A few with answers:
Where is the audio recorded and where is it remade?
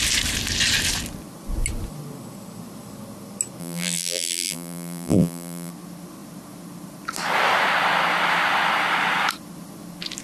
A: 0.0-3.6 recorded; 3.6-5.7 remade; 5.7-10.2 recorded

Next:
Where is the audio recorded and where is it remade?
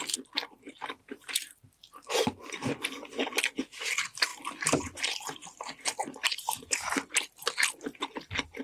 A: 0.0-1.0 recorded; 1.0-1.8 remade; 1.8-4.3 recorded; 4.3-8.1 remade; 8.1-8.6 recorded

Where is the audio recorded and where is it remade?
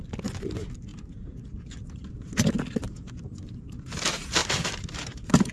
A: 0.0-4.4 recorded; 4.4-5.5 remade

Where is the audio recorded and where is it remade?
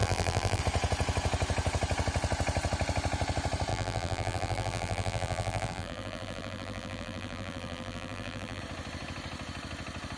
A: 0.0-0.6 remade; 0.6-3.7 recorded; 3.7-8.6 remade; 8.6-10.2 recorded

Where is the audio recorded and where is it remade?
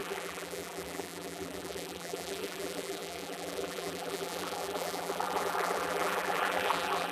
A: 0.0-7.1 remade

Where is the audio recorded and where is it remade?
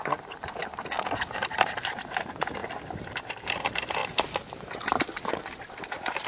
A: 0.0-0.6 remade; 0.6-1.2 recorded; 1.2-4.0 remade; 4.0-4.5 recorded; 4.5-6.3 remade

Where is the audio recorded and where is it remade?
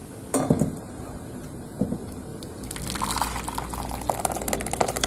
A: 0.0-0.9 recorded; 0.9-2.3 remade; 2.3-4.2 recorded; 4.2-5.1 remade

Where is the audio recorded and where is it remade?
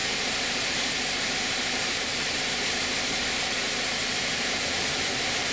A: 0.0-5.5 remade